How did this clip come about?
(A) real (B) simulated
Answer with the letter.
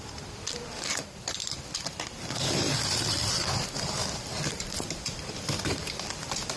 B